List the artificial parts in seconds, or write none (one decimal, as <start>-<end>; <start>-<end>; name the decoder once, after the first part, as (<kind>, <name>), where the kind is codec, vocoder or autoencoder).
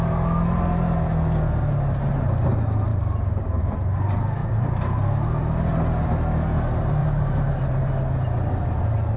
2.9-3.6 (vocoder, BigVGAN v2); 4.4-5.4; 7.0-7.9